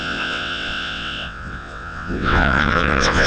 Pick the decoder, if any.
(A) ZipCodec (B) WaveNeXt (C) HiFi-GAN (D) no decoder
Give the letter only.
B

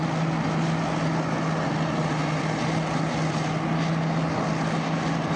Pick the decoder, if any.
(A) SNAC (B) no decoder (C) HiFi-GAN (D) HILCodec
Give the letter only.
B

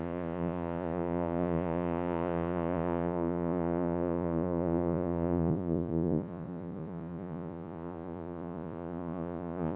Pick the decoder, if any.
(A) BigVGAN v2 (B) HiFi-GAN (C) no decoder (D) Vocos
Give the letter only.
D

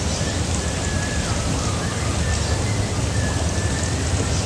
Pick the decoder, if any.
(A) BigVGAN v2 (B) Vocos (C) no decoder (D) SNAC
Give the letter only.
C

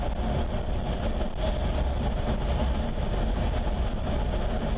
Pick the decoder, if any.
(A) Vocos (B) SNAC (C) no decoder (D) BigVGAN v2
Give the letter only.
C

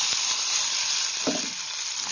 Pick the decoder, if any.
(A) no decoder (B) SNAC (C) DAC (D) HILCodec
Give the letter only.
A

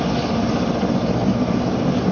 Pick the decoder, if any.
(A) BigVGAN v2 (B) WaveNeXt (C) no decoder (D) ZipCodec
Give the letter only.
C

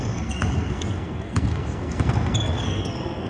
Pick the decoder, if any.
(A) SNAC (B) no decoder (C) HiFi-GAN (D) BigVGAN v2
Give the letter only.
A